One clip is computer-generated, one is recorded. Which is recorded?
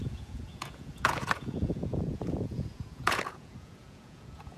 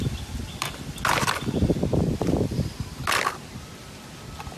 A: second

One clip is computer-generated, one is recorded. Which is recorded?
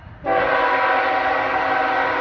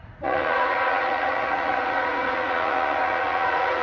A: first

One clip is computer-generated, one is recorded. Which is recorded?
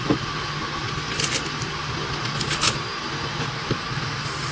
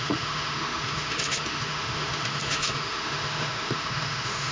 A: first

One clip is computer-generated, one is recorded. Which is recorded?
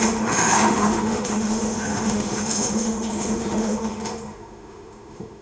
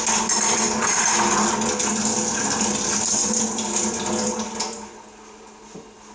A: second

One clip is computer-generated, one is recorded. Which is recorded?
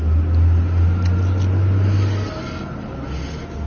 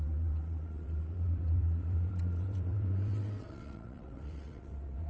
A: first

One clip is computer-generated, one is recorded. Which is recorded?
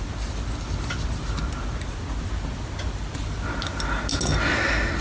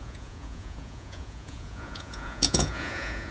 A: first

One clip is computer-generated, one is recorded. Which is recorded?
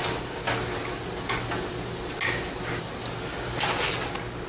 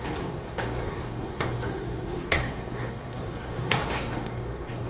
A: first